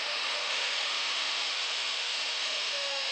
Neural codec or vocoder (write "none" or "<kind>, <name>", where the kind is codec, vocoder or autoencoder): autoencoder, DAC-VAE